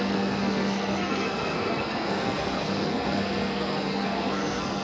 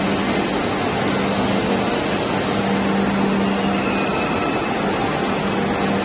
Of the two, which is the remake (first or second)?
first